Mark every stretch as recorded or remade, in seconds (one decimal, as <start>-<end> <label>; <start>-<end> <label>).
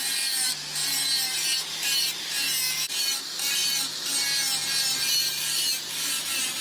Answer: 0.0-0.8 remade; 0.8-2.9 recorded; 2.9-4.1 remade; 4.1-4.8 recorded; 4.8-6.6 remade